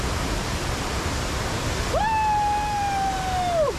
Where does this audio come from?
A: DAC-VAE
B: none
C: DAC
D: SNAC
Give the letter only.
B